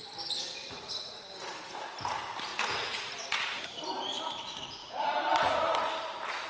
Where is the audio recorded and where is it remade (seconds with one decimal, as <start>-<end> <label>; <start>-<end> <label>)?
0.0-0.6 recorded; 0.6-1.2 remade; 1.2-2.5 recorded; 2.5-3.4 remade; 3.4-4.8 recorded; 4.8-5.5 remade; 5.5-6.5 recorded

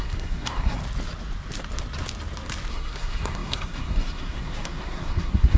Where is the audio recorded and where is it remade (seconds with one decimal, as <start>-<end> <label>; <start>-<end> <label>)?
0.0-0.8 remade; 0.8-2.7 recorded; 2.7-5.6 remade

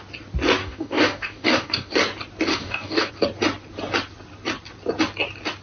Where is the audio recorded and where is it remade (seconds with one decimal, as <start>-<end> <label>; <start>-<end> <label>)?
0.0-0.6 recorded; 0.6-1.9 remade; 1.9-2.5 recorded; 2.5-3.1 remade; 3.1-5.6 recorded

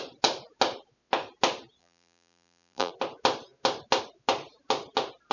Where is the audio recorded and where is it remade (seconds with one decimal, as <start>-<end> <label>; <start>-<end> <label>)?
0.0-1.8 recorded; 1.8-2.9 remade; 2.9-5.3 recorded

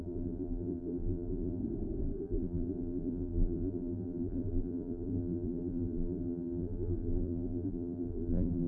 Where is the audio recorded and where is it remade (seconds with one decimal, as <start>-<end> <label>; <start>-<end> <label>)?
0.0-1.6 remade; 1.6-2.2 recorded; 2.2-8.7 remade

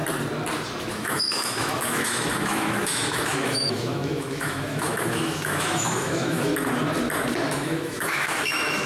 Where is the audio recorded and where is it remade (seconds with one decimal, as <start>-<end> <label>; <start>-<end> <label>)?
0.0-0.9 recorded; 0.9-6.5 remade; 6.5-7.4 recorded; 7.4-8.9 remade

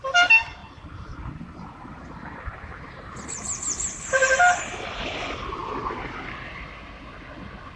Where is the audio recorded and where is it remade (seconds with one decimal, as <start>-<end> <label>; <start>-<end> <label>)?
0.0-0.6 recorded; 0.6-4.6 remade; 4.6-7.8 recorded

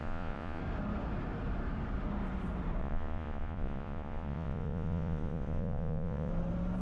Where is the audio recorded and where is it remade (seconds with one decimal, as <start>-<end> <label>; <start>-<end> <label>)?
0.0-0.6 remade; 0.6-2.8 recorded; 2.8-6.3 remade; 6.3-6.8 recorded